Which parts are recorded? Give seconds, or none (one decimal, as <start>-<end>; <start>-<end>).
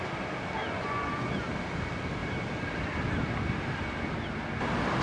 0.0-0.6; 1.5-5.0